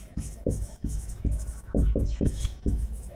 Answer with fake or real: fake